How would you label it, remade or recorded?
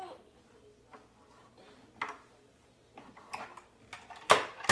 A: recorded